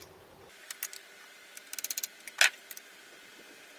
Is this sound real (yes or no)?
yes